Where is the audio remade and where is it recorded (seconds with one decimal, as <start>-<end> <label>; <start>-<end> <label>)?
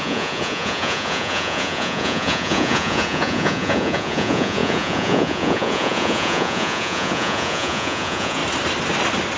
0.0-8.4 remade; 8.4-9.4 recorded